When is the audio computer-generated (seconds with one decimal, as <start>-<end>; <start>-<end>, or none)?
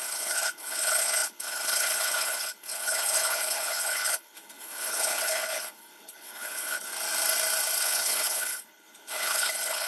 0.0-6.9; 7.8-9.9